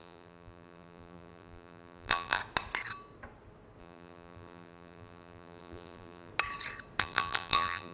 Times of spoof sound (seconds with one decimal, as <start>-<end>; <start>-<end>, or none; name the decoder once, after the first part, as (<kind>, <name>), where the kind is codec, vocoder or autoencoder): 0.0-2.4 (vocoder, BigVGAN v2); 3.8-6.3; 7.0-7.9